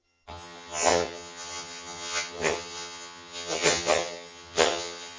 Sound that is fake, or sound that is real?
fake